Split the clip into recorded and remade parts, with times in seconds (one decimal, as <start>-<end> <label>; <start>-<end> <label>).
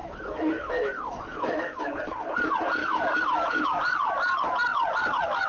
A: 0.0-1.9 remade; 1.9-2.8 recorded; 2.8-3.8 remade; 3.8-5.5 recorded